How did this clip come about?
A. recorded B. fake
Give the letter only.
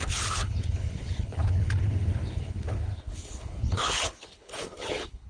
B